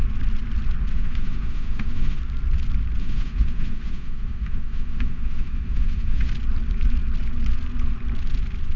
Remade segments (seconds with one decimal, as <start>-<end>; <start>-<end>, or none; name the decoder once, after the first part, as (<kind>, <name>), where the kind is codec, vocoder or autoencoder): 0.9-2.2 (autoencoder, DAC-VAE); 3.0-6.3